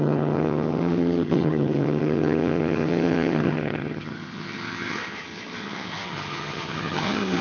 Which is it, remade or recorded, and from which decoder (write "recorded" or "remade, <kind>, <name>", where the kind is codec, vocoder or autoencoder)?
remade, vocoder, HiFi-GAN